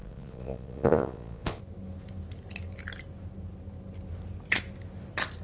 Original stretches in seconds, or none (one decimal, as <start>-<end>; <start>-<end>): 1.6-5.4